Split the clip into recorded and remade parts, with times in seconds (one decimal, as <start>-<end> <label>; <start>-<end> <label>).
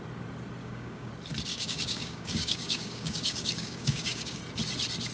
0.0-0.6 recorded; 0.6-1.1 remade; 1.1-1.5 recorded; 1.5-4.4 remade; 4.4-5.1 recorded